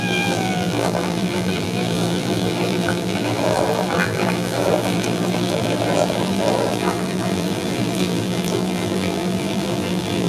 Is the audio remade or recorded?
remade